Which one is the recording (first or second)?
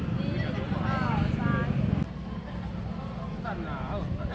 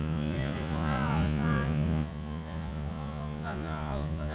first